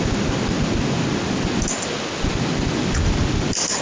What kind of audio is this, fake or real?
real